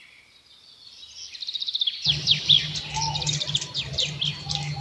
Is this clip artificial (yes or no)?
no